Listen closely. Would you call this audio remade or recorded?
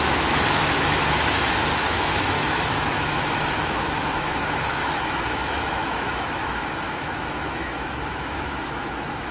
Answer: remade